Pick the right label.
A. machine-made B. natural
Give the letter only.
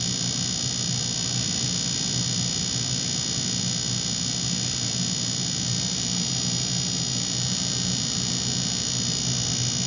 B